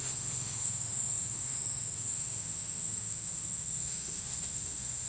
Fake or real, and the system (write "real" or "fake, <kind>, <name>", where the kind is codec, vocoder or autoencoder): fake, autoencoder, DAC-VAE